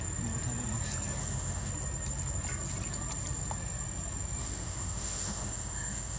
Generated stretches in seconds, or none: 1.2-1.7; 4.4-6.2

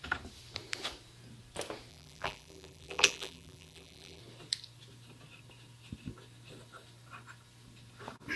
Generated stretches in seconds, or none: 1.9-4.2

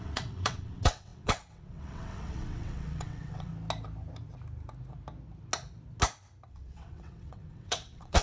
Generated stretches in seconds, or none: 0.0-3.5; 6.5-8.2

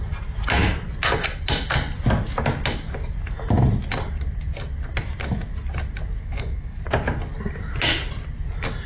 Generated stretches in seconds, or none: 6.2-6.8

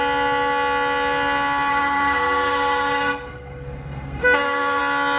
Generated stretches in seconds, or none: 1.7-4.8

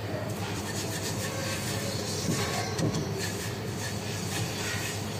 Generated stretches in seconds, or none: 0.6-5.2